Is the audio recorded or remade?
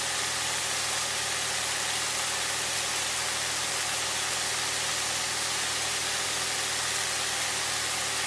recorded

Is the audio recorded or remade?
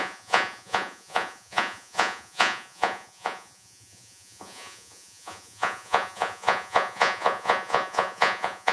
remade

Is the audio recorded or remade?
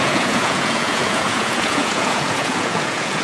remade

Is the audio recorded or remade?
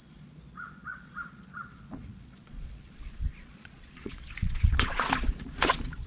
remade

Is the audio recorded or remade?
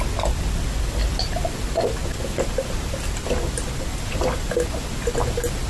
recorded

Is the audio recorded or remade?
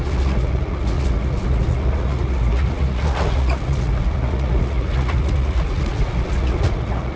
remade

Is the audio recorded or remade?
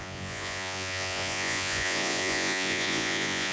remade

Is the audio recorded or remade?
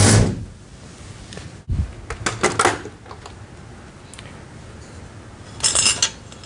recorded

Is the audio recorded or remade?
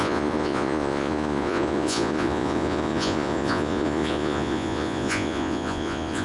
remade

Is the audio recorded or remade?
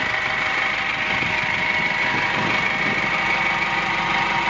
recorded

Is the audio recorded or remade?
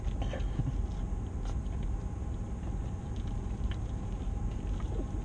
recorded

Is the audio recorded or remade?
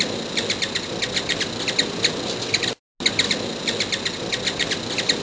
recorded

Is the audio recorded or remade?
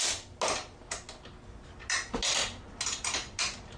recorded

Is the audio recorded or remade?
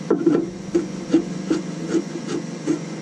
remade